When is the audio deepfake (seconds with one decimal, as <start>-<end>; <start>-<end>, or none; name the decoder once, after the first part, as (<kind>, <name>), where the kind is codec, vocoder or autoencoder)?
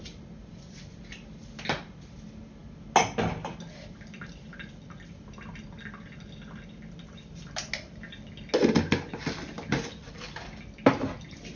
none